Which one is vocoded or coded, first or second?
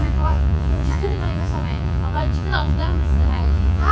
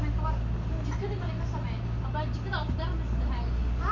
first